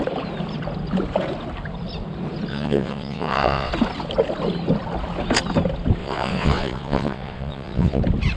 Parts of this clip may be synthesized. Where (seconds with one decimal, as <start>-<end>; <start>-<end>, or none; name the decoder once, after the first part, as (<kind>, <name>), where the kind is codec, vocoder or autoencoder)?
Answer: 2.5-3.7 (vocoder, WaveNeXt); 6.0-8.0